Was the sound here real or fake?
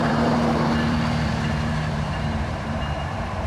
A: fake